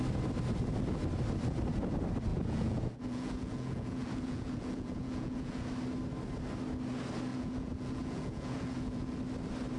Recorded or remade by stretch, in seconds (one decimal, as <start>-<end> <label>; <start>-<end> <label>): 0.0-2.3 recorded; 2.3-5.7 remade; 5.7-7.3 recorded; 7.3-9.2 remade; 9.2-9.8 recorded